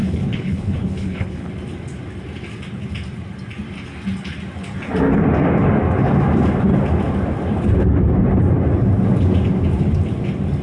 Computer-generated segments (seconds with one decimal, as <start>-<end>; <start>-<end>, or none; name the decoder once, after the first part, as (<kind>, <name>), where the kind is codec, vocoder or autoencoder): 0.0-1.5 (codec, HILCodec)